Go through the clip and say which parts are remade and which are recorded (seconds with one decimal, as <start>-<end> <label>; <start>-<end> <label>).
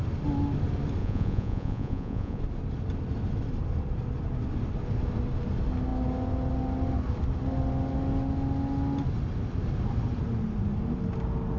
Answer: 0.0-1.0 recorded; 1.0-2.4 remade; 2.4-11.6 recorded